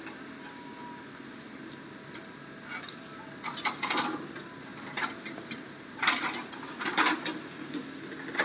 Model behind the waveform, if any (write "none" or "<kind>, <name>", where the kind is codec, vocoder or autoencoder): none